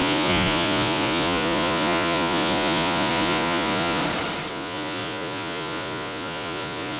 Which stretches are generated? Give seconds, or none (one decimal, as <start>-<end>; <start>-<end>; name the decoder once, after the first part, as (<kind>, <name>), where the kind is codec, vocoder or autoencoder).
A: 0.0-4.0 (vocoder, Vocos); 4.5-7.0